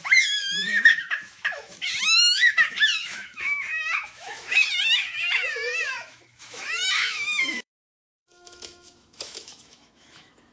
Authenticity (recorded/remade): remade